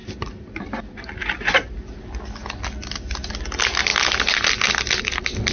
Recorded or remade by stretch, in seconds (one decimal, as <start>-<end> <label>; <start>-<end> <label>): 0.0-5.5 recorded